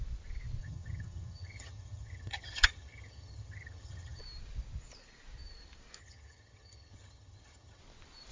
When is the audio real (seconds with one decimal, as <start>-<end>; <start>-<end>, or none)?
0.0-0.6; 4.2-6.0; 7.8-8.3